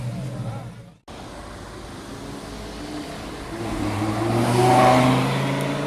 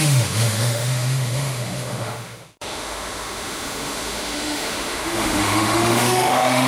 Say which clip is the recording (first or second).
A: first